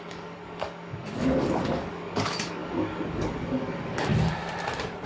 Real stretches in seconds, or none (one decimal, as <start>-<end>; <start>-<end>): 4.1-5.1